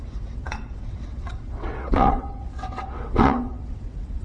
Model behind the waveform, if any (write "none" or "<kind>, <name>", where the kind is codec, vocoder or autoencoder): vocoder, WaveNeXt